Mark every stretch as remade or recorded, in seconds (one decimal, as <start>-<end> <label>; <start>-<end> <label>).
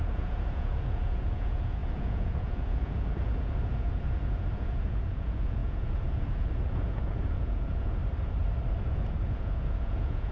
0.0-8.0 remade; 8.0-8.8 recorded; 8.8-10.3 remade